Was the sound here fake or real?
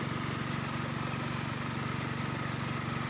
real